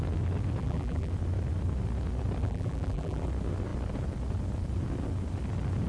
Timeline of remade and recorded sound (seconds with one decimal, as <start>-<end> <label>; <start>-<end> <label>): 0.0-0.6 recorded; 0.6-1.1 remade; 1.1-2.4 recorded; 2.4-3.3 remade; 3.3-5.9 recorded